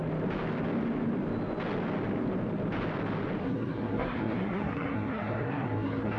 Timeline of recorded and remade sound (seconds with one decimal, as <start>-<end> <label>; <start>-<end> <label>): 0.0-3.4 recorded; 3.4-6.2 remade